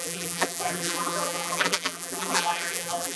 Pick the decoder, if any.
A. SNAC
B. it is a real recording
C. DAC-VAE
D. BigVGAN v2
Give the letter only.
D